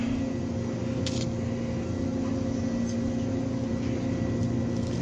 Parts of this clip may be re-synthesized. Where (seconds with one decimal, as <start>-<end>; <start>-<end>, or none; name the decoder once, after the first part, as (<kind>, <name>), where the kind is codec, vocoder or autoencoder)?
none